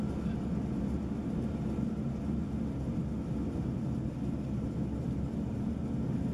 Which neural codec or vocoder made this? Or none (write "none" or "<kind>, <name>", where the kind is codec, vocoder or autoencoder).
none